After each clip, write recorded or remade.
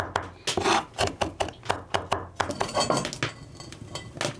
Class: recorded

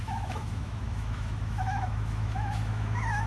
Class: remade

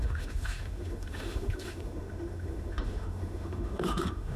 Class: remade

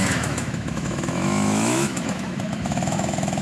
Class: remade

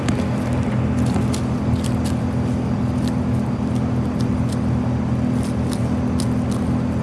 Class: recorded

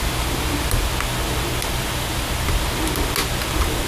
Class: recorded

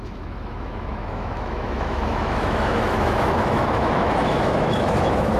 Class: remade